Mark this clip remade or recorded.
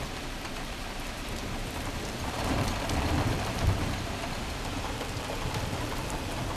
remade